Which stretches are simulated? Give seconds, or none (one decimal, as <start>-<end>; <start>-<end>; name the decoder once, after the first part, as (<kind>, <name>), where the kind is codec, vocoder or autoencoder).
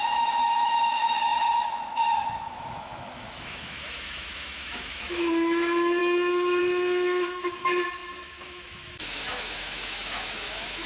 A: 0.0-10.9 (autoencoder, DAC-VAE)